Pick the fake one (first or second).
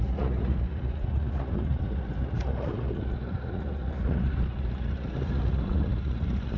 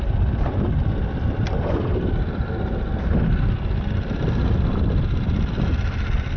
first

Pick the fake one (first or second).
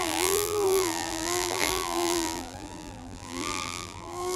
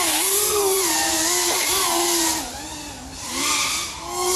first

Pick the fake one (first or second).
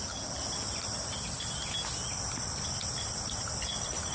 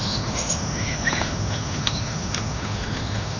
second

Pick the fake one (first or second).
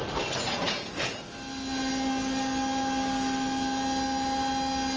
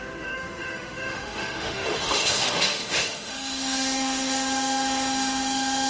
second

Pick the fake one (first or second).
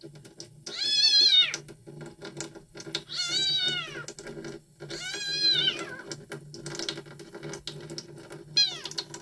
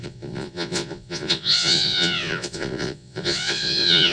second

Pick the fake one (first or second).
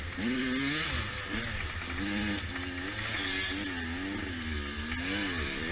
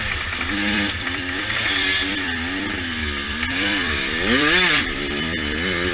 second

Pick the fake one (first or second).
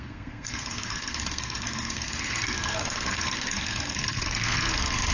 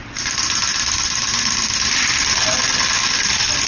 first